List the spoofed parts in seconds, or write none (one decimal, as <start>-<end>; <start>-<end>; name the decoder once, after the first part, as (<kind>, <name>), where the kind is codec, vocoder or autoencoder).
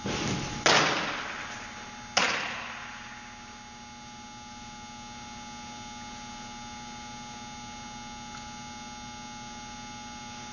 none